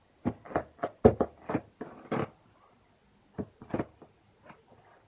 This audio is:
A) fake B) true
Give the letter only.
B